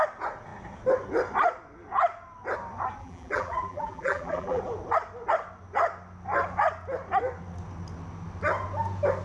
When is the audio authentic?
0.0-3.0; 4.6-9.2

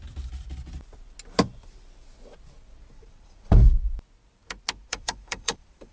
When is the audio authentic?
0.0-2.9; 3.6-4.9

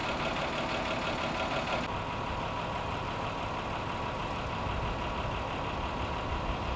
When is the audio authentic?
0.0-6.8

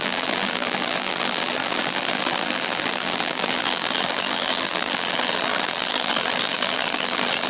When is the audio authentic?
none

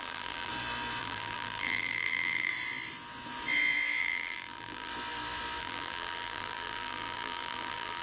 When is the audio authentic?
0.5-1.0; 2.5-4.0; 4.9-5.6

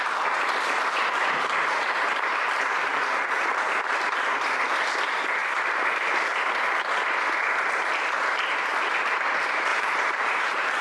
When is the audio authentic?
0.0-9.7

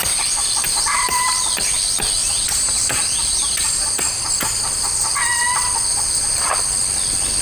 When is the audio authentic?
1.3-2.2; 4.0-5.9; 6.5-7.4

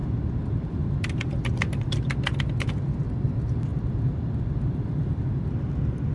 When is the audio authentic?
2.0-3.7; 5.3-6.1